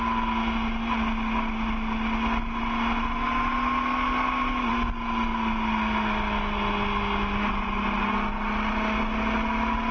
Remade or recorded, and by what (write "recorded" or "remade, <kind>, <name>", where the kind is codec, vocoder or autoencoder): recorded